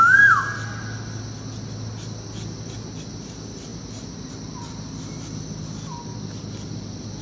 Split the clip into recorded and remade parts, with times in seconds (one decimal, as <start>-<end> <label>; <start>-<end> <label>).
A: 0.0-7.2 recorded